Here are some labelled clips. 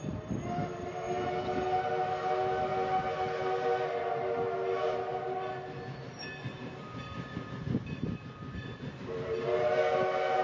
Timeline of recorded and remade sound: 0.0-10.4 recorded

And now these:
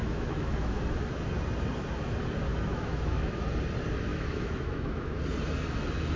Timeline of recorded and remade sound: 0.0-0.8 remade; 0.8-2.5 recorded; 2.5-3.4 remade; 3.4-4.1 recorded; 4.1-5.2 remade; 5.2-6.2 recorded